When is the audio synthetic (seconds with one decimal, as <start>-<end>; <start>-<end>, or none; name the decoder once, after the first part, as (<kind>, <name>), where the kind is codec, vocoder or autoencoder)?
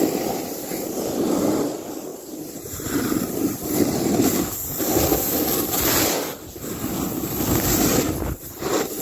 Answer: 2.1-2.9 (vocoder, BigVGAN v2)